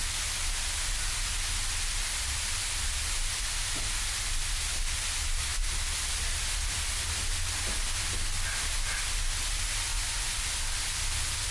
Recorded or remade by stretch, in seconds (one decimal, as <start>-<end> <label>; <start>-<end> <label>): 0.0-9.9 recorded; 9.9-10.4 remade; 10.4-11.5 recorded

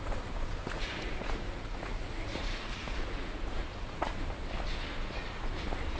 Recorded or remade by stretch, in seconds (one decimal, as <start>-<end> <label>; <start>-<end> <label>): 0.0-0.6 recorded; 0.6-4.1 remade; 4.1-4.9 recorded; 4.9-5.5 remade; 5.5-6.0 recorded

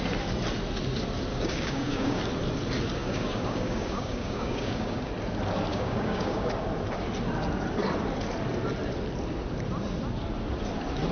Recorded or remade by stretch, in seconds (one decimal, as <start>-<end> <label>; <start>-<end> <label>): 0.0-1.3 recorded; 1.3-2.2 remade; 2.2-3.0 recorded; 3.0-5.1 remade; 5.1-5.7 recorded; 5.7-6.5 remade; 6.5-11.1 recorded